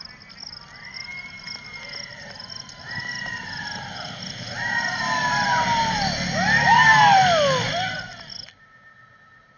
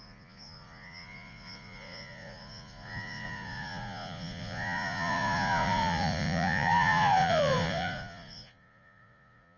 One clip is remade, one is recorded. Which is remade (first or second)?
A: second